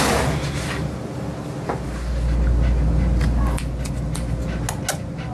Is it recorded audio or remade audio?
recorded